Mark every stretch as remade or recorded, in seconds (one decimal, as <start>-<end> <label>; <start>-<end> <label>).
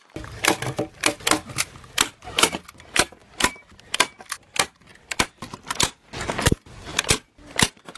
0.0-8.0 recorded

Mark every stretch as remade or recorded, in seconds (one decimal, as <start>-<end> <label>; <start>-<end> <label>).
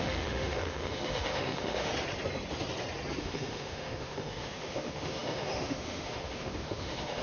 0.0-1.9 remade; 1.9-3.2 recorded; 3.2-7.2 remade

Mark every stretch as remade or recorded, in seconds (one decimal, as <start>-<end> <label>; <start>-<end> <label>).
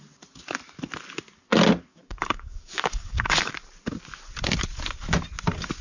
0.0-1.9 recorded; 1.9-3.5 remade; 3.5-5.8 recorded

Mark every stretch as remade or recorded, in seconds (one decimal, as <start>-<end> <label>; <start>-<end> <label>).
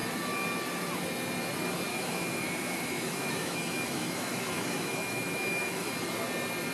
0.0-1.9 recorded; 1.9-5.9 remade; 5.9-6.7 recorded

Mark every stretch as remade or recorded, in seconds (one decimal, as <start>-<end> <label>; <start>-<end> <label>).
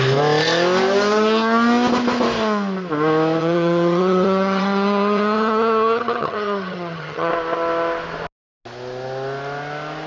0.0-3.4 recorded; 3.4-7.3 remade; 7.3-10.1 recorded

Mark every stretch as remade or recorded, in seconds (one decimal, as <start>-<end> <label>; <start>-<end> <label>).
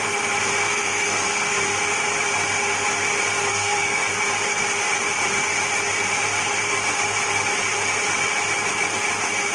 0.0-0.6 recorded; 0.6-1.5 remade; 1.5-3.5 recorded; 3.5-4.1 remade; 4.1-9.5 recorded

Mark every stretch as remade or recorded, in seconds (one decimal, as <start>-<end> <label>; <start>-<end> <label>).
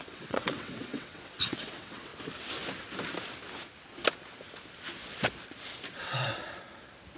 0.0-2.1 remade; 2.1-6.0 recorded; 6.0-6.4 remade; 6.4-7.2 recorded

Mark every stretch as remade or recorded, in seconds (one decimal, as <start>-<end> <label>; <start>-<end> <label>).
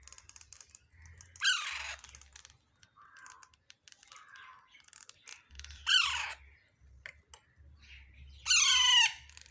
0.0-5.3 recorded; 5.3-6.4 remade; 6.4-9.5 recorded